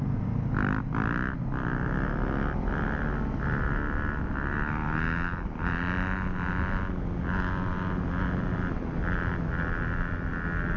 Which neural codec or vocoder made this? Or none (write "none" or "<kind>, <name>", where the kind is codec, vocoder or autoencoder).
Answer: none